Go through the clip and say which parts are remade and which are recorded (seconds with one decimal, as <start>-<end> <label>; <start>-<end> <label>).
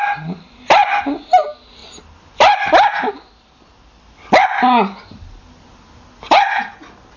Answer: 0.0-7.2 recorded